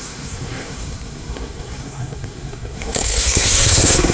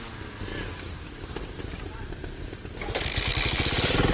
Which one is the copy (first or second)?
first